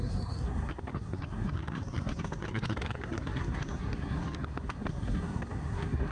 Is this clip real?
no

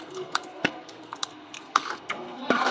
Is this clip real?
no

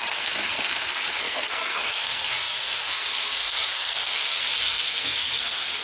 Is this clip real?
no